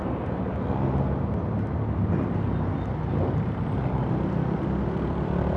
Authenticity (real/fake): real